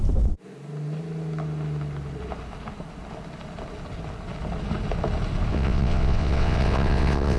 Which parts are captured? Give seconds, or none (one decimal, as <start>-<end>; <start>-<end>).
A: 0.0-5.5